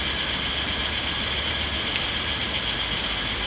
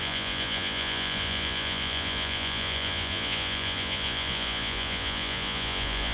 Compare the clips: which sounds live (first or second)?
first